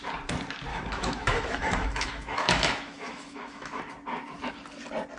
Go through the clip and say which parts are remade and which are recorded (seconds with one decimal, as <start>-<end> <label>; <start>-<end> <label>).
0.0-0.7 recorded; 0.7-3.8 remade; 3.8-5.2 recorded